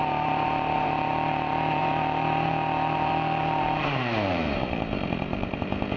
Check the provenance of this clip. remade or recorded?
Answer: remade